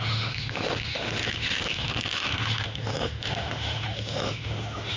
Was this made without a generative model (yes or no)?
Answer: no